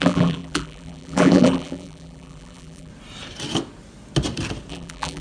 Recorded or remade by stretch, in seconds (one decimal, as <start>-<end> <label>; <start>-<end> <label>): 0.0-2.9 remade; 2.9-4.7 recorded; 4.7-5.2 remade

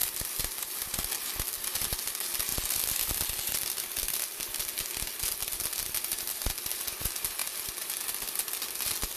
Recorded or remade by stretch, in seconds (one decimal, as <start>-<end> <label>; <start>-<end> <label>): 0.0-1.1 remade; 1.1-9.2 recorded

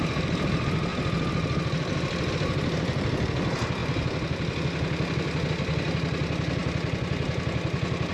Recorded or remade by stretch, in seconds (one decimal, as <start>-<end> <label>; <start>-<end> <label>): 0.0-0.9 remade; 0.9-2.3 recorded; 2.3-3.8 remade; 3.8-5.5 recorded; 5.5-6.6 remade; 6.6-8.1 recorded

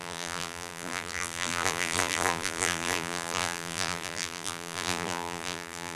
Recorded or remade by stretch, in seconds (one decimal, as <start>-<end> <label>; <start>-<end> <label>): 0.0-6.0 remade

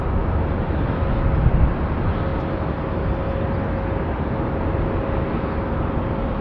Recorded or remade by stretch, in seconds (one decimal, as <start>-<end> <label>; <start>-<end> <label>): 0.0-6.4 recorded